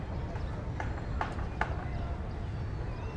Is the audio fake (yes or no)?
no